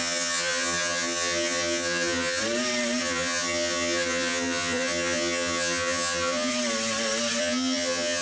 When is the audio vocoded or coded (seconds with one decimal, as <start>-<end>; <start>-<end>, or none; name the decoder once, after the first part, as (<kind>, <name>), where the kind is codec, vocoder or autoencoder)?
0.0-2.4 (vocoder, HiFi-GAN); 3.0-6.5; 7.4-8.2